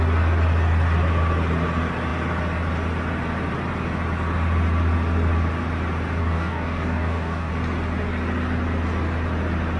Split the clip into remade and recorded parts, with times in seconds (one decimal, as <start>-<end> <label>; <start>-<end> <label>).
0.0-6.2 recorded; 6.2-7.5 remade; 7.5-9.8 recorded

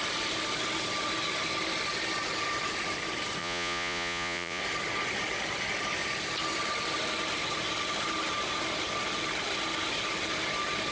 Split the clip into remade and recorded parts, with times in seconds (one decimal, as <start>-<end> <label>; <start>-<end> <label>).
0.0-3.4 recorded; 3.4-4.6 remade; 4.6-10.9 recorded

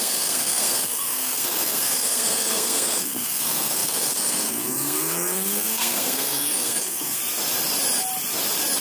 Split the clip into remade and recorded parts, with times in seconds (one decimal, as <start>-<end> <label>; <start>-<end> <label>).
0.0-7.2 remade; 7.2-8.8 recorded

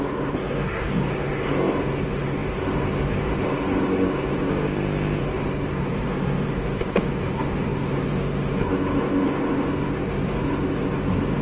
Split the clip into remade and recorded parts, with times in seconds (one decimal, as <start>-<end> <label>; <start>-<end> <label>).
0.0-4.5 remade; 4.5-5.2 recorded; 5.2-11.4 remade

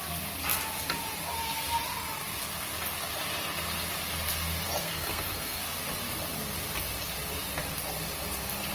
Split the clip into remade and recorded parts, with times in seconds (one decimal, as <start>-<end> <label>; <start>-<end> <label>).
0.0-4.8 recorded; 4.8-5.6 remade; 5.6-8.7 recorded

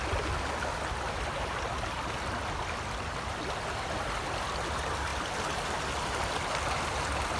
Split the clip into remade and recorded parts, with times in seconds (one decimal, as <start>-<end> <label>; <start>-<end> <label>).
0.0-7.4 recorded

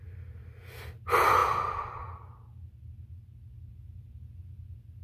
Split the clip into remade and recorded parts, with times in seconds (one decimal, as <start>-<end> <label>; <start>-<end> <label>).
0.0-5.0 recorded

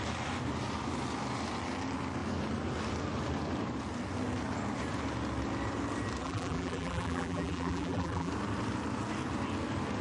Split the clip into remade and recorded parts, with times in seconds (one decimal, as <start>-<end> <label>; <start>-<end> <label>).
0.0-6.2 recorded; 6.2-8.3 remade; 8.3-10.0 recorded